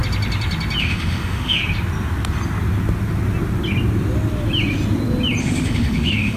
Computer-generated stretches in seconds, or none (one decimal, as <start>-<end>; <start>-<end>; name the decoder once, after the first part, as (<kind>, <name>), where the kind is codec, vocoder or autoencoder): 0.8-1.6 (autoencoder, DAC-VAE); 5.4-6.4